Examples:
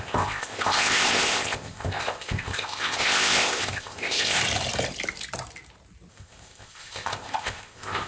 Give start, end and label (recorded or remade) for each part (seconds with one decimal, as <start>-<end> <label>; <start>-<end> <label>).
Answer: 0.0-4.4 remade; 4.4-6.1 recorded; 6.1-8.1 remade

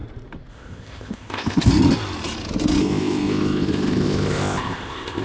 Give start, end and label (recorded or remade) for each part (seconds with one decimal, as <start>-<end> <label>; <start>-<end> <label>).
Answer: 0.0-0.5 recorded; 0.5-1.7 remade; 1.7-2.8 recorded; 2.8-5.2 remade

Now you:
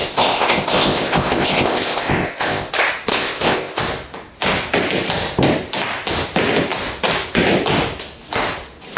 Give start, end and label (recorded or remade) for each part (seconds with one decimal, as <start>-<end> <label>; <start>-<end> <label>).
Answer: 0.0-2.7 remade; 2.7-3.1 recorded; 3.1-3.8 remade; 3.8-9.0 recorded

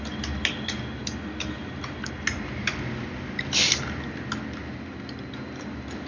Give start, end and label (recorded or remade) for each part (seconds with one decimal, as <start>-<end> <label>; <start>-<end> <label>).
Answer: 0.0-6.1 recorded

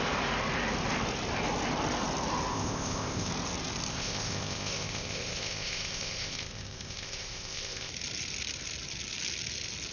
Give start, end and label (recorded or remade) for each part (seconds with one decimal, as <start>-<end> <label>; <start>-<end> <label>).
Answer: 0.0-2.5 recorded; 2.5-3.3 remade; 3.3-3.9 recorded; 3.9-7.9 remade; 7.9-9.9 recorded

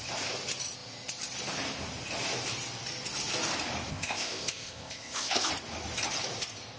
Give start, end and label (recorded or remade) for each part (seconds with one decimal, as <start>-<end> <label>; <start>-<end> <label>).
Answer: 0.0-3.9 recorded; 3.9-5.5 remade; 5.5-6.8 recorded